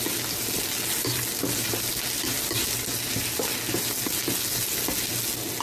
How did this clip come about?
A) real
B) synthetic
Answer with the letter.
A